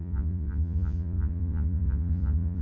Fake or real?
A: fake